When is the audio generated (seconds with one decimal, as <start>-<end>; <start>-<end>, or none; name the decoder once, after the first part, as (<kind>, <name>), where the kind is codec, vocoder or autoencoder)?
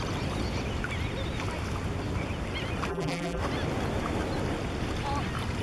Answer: 2.9-3.4 (vocoder, BigVGAN v2)